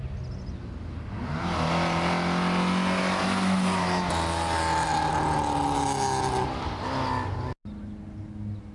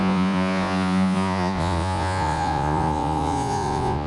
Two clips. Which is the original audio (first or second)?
first